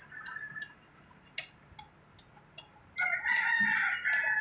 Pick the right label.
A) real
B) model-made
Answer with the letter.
A